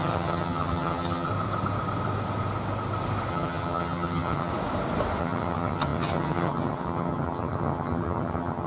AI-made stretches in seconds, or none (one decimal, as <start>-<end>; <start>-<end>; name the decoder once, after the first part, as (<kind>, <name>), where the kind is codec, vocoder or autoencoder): 0.0-1.3 (vocoder, HiFi-GAN); 3.3-4.5; 5.2-8.7